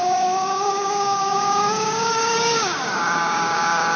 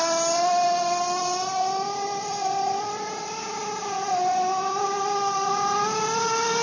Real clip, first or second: second